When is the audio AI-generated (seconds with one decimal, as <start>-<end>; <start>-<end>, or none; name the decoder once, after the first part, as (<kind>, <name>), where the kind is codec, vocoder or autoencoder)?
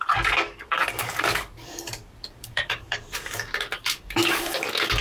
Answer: 0.0-5.0 (codec, DAC)